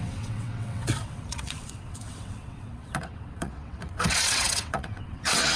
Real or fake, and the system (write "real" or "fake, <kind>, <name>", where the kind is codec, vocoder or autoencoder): fake, vocoder, WaveNeXt